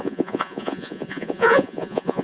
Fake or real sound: fake